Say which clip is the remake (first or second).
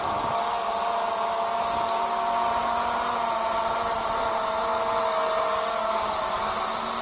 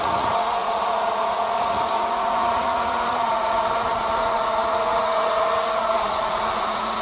second